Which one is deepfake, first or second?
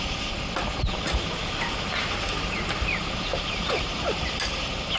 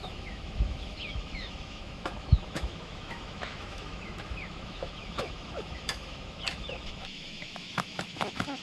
second